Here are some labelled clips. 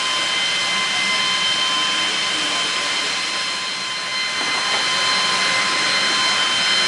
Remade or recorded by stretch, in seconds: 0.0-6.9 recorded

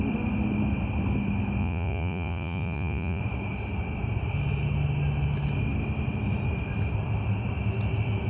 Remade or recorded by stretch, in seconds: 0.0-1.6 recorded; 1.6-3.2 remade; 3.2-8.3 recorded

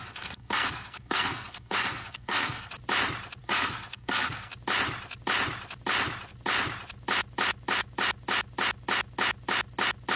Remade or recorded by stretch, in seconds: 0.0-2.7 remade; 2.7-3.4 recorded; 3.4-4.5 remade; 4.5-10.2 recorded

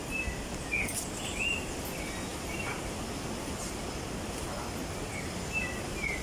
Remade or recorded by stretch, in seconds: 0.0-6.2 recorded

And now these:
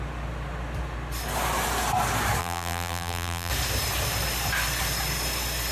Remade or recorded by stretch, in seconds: 0.0-2.4 recorded; 2.4-3.5 remade; 3.5-5.7 recorded

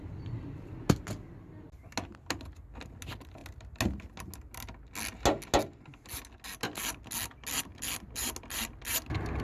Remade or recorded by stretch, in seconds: 0.0-9.4 recorded